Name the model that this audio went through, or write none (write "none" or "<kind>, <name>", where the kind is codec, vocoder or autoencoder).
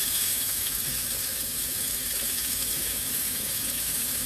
autoencoder, DAC-VAE